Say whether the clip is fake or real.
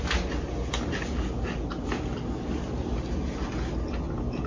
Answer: real